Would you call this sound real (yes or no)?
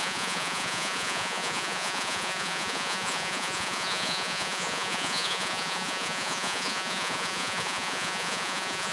no